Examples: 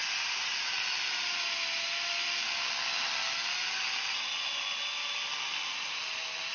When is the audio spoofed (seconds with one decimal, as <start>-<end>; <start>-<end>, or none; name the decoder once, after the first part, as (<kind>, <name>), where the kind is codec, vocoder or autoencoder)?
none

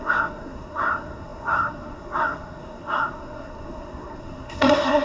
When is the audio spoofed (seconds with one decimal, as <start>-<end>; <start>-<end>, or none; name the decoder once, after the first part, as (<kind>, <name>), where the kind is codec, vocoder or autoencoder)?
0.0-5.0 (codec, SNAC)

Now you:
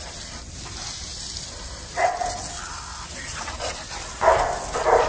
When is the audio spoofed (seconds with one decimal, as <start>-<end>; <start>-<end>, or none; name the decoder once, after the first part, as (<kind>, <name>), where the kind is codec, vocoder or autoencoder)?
none

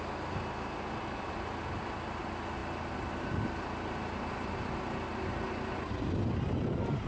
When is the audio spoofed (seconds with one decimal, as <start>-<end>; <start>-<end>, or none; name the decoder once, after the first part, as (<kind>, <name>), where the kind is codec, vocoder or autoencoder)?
none